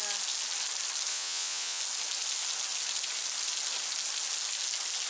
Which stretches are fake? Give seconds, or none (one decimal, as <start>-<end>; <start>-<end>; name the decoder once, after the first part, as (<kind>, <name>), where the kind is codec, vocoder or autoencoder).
1.1-1.8 (vocoder, Vocos)